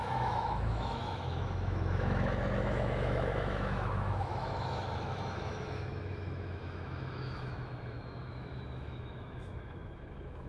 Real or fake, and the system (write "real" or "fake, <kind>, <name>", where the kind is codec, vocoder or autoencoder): fake, autoencoder, DAC-VAE